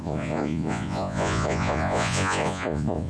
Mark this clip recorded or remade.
remade